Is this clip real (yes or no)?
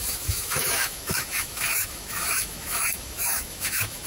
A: no